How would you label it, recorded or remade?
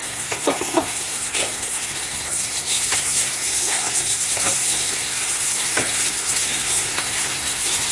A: remade